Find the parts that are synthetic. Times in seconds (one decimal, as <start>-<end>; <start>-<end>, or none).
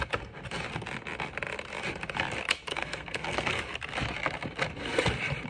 2.7-3.6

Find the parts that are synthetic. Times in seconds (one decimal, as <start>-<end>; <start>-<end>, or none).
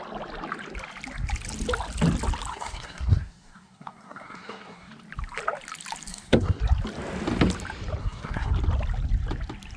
2.5-4.9; 6.1-6.6; 8.0-8.5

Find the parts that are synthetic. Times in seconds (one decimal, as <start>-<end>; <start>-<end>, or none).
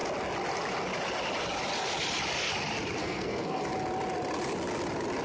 3.0-3.6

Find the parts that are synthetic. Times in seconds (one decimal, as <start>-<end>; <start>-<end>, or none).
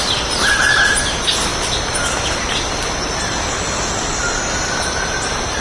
none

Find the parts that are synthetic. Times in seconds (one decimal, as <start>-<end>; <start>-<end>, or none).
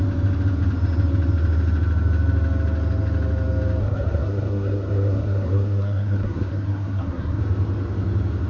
3.8-7.4